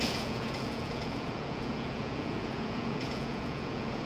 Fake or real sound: fake